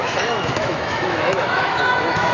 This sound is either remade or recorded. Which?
remade